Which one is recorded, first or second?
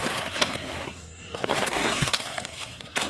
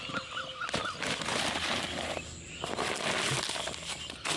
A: second